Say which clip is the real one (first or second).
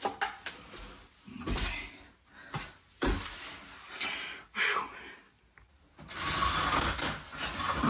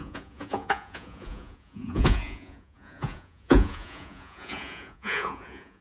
first